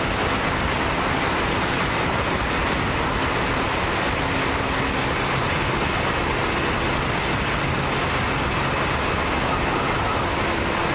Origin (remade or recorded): recorded